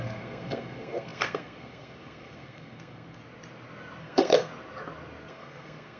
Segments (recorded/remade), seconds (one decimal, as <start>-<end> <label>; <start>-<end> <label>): 0.0-3.2 remade; 3.2-4.0 recorded; 4.0-4.5 remade; 4.5-5.3 recorded; 5.3-6.0 remade